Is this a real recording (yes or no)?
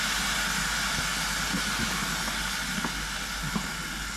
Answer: yes